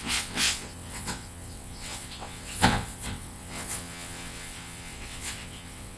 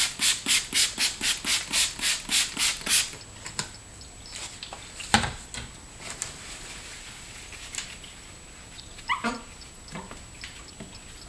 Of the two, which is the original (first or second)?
second